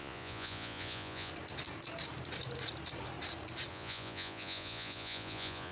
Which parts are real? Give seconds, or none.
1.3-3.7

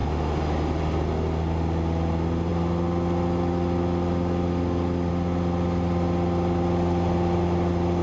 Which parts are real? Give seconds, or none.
0.0-8.0